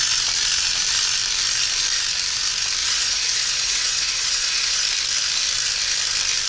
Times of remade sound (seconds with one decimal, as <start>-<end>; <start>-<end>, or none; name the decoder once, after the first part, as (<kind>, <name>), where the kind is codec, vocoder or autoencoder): 2.8-4.8 (vocoder, Vocos)